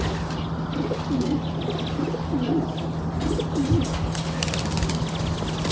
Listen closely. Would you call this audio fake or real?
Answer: real